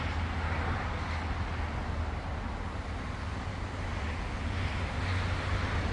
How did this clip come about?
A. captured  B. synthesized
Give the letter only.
A